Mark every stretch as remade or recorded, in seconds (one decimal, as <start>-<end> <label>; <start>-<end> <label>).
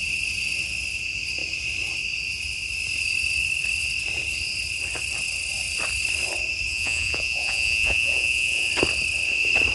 0.0-6.7 recorded; 6.7-8.7 remade; 8.7-9.7 recorded